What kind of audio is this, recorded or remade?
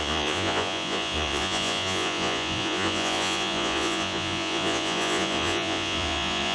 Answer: remade